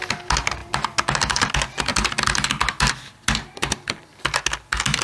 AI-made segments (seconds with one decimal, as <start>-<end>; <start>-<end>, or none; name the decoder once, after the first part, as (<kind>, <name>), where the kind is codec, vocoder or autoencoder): none